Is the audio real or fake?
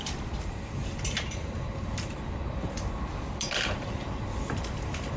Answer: fake